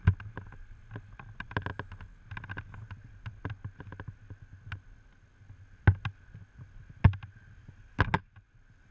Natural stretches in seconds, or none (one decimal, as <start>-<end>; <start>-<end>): 0.0-8.9